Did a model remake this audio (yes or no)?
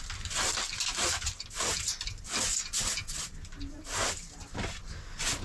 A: no